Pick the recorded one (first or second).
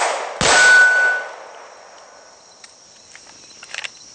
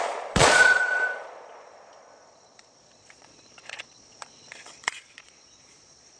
first